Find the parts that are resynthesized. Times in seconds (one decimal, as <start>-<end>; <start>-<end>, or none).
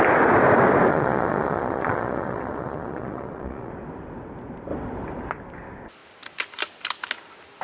0.9-3.7